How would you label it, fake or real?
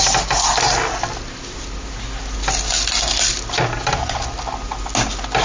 real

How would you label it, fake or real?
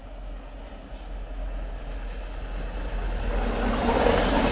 real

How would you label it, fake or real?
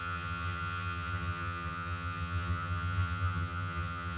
fake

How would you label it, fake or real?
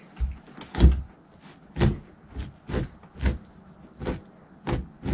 real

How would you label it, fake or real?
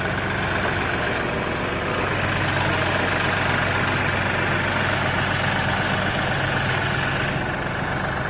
real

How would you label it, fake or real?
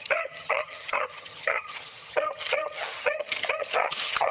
fake